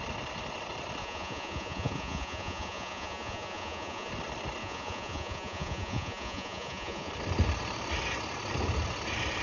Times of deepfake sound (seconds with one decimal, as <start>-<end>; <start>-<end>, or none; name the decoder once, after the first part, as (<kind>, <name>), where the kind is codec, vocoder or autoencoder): 1.0-4.1 (vocoder, Vocos); 4.6-7.1